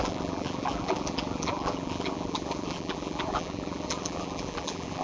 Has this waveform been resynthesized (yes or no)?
yes